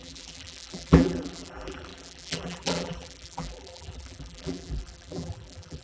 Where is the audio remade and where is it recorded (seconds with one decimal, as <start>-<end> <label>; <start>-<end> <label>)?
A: 0.0-5.8 remade